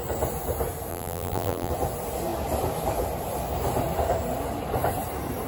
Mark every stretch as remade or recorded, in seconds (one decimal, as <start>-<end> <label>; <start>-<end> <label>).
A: 0.0-0.9 recorded; 0.9-1.7 remade; 1.7-5.5 recorded